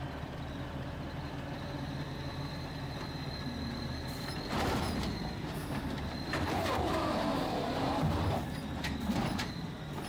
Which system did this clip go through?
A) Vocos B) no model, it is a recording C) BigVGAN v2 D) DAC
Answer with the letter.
C